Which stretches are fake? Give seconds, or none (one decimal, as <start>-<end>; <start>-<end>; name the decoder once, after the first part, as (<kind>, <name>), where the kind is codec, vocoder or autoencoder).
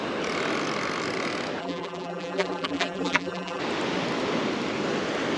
1.6-3.6 (vocoder, BigVGAN v2)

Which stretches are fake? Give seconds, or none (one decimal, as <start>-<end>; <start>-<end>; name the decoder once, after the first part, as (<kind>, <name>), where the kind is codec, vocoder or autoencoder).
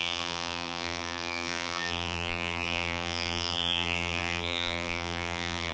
0.0-5.7 (vocoder, BigVGAN v2)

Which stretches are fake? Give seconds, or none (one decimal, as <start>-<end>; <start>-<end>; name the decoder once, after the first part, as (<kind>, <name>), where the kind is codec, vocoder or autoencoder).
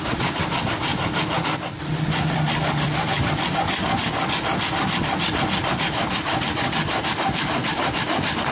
0.0-0.9 (vocoder, BigVGAN v2); 5.7-8.5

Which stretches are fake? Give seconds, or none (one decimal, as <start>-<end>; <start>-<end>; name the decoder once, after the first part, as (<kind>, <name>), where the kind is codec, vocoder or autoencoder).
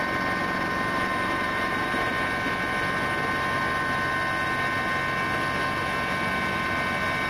0.4-2.1 (vocoder, BigVGAN v2)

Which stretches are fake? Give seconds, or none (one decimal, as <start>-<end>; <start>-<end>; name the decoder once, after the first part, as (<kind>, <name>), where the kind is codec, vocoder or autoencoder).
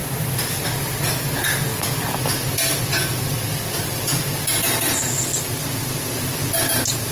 0.0-0.9 (vocoder, BigVGAN v2)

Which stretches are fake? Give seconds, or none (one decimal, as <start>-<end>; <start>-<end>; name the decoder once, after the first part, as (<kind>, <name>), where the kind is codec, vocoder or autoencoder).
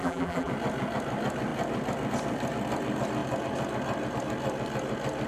0.0-0.5 (vocoder, BigVGAN v2)